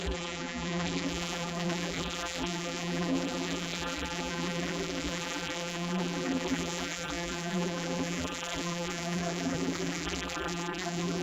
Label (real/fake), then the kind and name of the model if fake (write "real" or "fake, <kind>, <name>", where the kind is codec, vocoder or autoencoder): fake, vocoder, BigVGAN v2